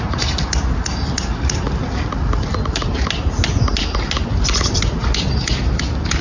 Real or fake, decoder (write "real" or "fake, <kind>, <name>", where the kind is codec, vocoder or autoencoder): real